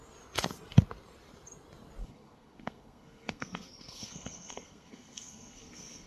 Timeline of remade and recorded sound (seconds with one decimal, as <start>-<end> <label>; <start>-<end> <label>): 0.0-2.0 recorded; 2.0-6.1 remade